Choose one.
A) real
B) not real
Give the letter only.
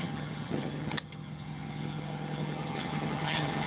B